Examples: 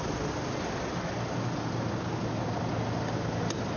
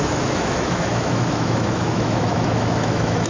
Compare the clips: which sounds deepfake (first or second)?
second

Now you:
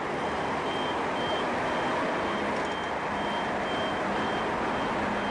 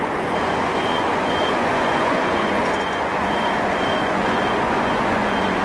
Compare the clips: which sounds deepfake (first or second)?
second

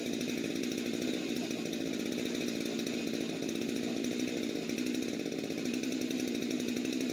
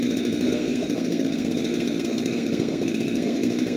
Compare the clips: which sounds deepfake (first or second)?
second